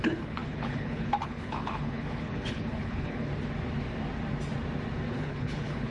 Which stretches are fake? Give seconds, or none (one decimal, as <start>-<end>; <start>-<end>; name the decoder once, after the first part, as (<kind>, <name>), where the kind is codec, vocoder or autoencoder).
0.0-3.3 (codec, HILCodec); 5.1-5.9